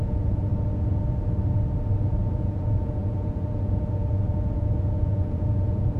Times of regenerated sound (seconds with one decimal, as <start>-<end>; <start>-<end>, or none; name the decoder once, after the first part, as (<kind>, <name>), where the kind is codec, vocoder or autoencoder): 0.0-0.5 (vocoder, Vocos); 2.3-6.0